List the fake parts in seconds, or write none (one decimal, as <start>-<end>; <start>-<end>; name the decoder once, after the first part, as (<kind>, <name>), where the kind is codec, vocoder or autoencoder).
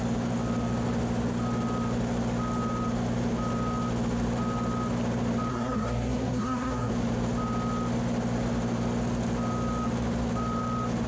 5.5-6.9 (codec, SNAC)